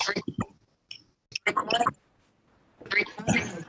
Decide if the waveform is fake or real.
real